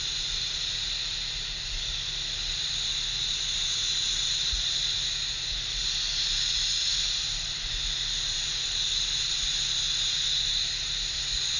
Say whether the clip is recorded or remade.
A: recorded